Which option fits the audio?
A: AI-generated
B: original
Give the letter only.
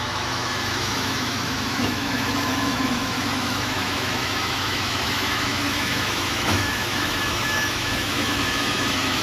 A